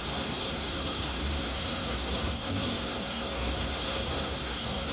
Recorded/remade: remade